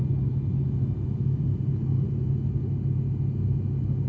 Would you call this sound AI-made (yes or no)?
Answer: no